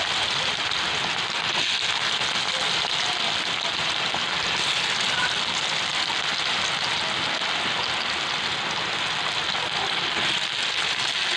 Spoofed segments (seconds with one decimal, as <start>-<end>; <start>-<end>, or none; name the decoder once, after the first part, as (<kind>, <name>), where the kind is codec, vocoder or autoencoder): none